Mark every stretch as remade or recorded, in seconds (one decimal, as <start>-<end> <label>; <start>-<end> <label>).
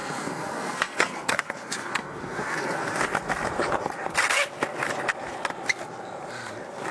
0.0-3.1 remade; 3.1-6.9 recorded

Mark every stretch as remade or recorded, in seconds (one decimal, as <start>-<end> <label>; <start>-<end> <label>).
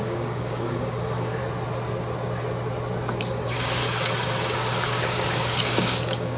0.0-1.4 remade; 1.4-3.2 recorded; 3.2-3.8 remade; 3.8-4.4 recorded; 4.4-6.4 remade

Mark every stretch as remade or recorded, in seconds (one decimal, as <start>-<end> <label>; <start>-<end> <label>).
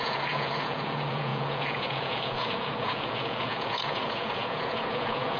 0.0-5.4 remade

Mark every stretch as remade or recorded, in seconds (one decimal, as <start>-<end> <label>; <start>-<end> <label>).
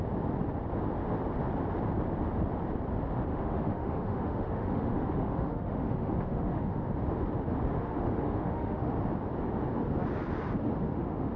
0.0-3.3 recorded; 3.3-7.0 remade; 7.0-7.7 recorded; 7.7-8.9 remade; 8.9-10.8 recorded; 10.8-11.4 remade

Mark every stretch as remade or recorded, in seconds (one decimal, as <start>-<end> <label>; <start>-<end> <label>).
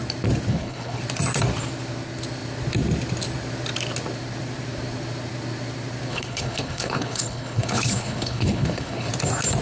0.0-0.5 recorded; 0.5-1.0 remade; 1.0-6.1 recorded; 6.1-9.1 remade; 9.1-9.6 recorded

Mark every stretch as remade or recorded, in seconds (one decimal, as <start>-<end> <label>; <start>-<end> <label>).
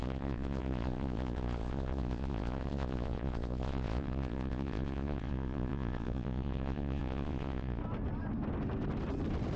0.0-7.8 remade; 7.8-9.6 recorded